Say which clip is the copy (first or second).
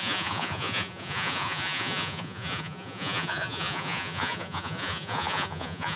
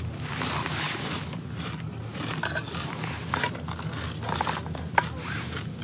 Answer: first